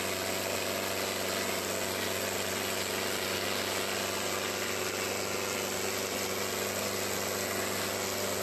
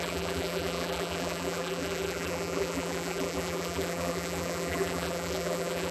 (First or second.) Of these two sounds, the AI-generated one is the second